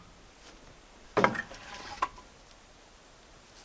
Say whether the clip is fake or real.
real